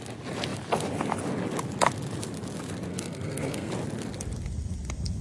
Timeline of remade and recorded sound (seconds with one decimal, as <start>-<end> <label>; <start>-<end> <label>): 0.0-2.9 recorded; 2.9-3.7 remade; 3.7-5.2 recorded